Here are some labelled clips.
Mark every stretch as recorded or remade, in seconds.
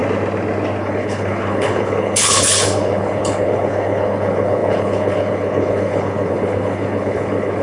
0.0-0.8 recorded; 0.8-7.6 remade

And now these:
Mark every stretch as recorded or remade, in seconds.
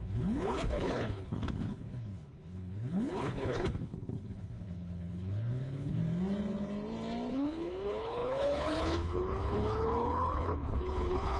0.0-6.0 remade; 6.0-7.3 recorded; 7.3-11.4 remade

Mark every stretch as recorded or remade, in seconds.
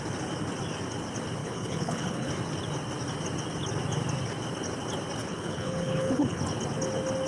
0.0-1.4 recorded; 1.4-2.3 remade; 2.3-5.2 recorded; 5.2-6.4 remade; 6.4-7.3 recorded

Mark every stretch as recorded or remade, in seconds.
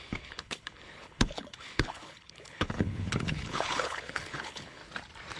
0.0-4.8 remade; 4.8-5.4 recorded